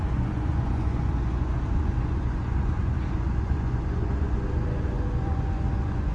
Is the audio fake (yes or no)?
yes